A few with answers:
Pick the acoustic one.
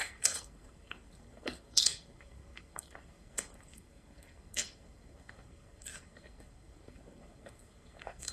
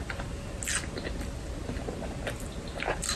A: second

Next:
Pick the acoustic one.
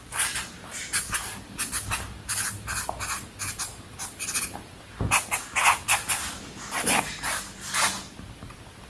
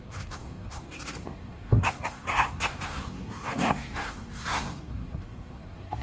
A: first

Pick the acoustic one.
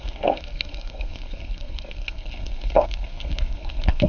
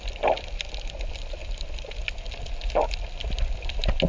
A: second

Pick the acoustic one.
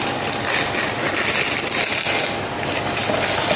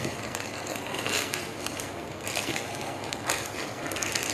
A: first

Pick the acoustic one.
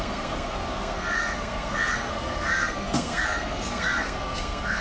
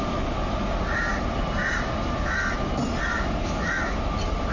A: second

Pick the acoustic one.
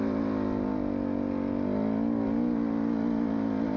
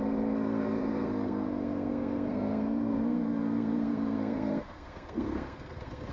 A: first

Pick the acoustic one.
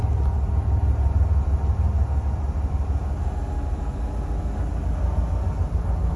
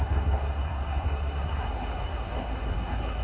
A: first